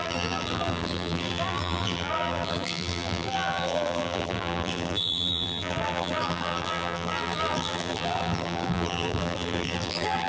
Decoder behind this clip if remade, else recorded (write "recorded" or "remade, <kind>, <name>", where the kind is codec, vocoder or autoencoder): remade, vocoder, BigVGAN v2